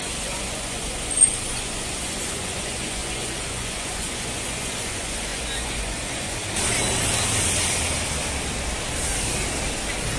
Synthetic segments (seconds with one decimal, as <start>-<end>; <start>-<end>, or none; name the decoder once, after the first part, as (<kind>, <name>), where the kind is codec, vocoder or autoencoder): 0.0-6.4 (vocoder, Vocos)